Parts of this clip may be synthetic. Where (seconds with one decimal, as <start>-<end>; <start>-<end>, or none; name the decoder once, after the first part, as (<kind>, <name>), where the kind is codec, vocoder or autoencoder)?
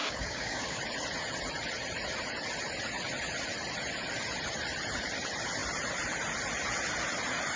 0.0-0.8 (codec, DAC)